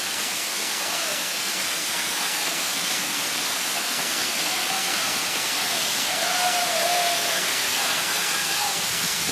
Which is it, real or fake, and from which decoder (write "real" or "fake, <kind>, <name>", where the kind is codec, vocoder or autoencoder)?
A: fake, codec, SNAC